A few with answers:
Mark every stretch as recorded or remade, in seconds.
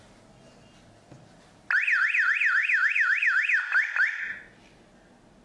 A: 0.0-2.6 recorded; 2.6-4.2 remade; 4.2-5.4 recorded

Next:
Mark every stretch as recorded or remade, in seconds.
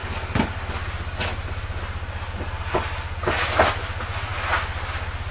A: 0.0-5.3 recorded